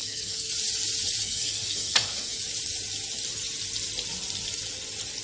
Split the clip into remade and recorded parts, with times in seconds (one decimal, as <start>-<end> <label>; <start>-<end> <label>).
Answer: 0.0-0.5 remade; 0.5-1.2 recorded; 1.2-2.4 remade; 2.4-5.2 recorded